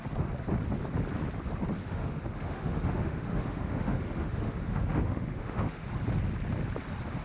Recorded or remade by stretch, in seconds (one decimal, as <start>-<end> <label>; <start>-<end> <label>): 0.0-1.8 recorded; 1.8-5.9 remade; 5.9-7.2 recorded

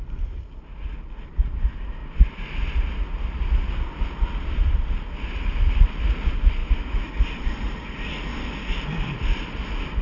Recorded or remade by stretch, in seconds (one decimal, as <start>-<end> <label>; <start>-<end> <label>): 0.0-6.6 recorded; 6.6-7.1 remade; 7.1-10.0 recorded

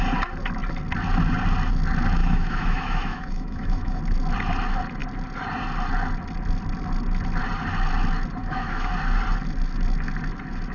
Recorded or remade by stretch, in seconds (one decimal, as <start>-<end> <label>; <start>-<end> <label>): 0.0-2.2 recorded; 2.2-4.0 remade; 4.0-8.4 recorded; 8.4-8.9 remade; 8.9-10.7 recorded

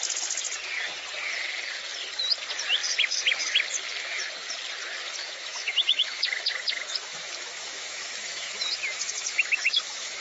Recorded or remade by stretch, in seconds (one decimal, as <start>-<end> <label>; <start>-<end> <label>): 0.0-5.2 recorded; 5.2-10.2 remade

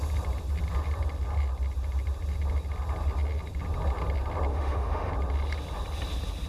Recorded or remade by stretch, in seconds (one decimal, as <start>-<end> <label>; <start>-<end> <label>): 0.0-4.5 recorded; 4.5-5.1 remade; 5.1-6.5 recorded

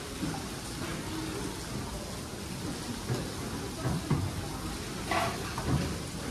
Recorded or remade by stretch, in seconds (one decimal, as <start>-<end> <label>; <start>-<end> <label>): 0.0-6.3 recorded

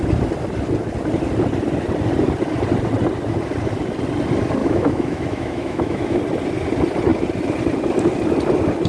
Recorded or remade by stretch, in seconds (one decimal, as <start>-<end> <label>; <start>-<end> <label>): 0.0-4.6 recorded; 4.6-6.2 remade; 6.2-8.9 recorded

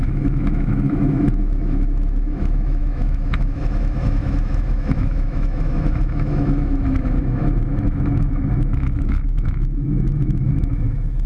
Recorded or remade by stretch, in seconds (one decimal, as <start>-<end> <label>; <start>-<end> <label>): 0.0-11.3 remade